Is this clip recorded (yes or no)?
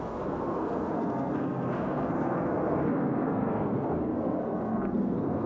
no